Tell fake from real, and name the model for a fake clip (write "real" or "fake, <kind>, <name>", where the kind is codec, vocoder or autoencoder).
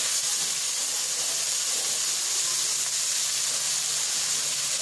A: real